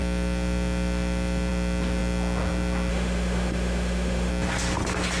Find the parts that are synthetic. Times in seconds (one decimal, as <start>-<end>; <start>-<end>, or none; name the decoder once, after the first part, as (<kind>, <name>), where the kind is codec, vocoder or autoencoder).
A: 2.9-4.3 (autoencoder, DAC-VAE)